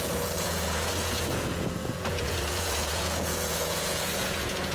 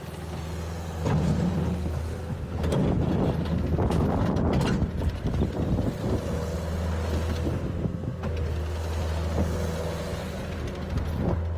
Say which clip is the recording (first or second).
second